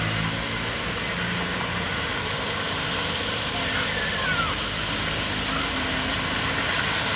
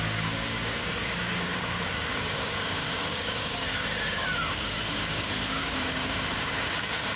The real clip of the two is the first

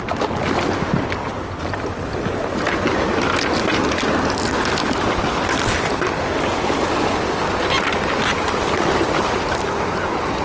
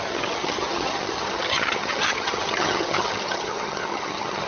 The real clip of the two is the first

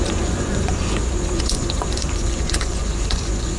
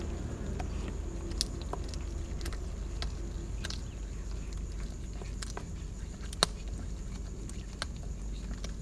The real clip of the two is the second